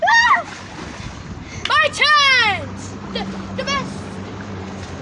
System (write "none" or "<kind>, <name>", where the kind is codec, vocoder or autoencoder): none